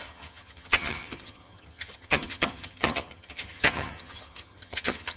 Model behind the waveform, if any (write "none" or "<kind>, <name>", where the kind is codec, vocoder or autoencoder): vocoder, HiFi-GAN